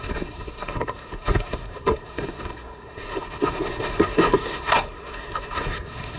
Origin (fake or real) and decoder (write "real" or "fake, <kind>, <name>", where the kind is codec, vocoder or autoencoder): fake, codec, SNAC